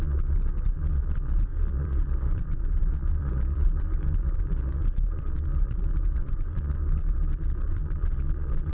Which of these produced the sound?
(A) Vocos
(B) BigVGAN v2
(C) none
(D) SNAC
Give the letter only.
A